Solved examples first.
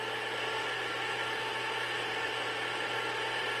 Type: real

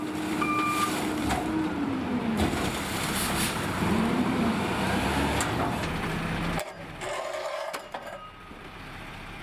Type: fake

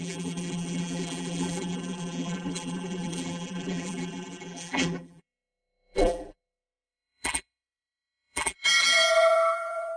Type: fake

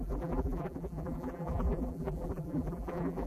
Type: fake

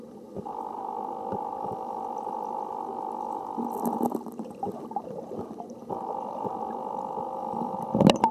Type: fake